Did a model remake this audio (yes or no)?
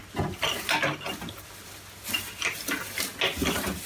no